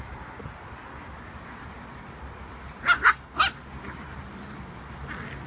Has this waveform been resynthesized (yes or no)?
no